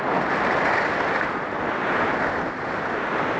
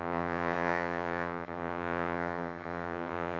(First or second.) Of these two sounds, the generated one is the second